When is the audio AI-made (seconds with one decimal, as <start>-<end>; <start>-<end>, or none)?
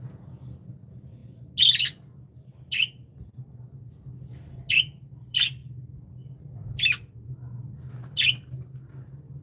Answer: none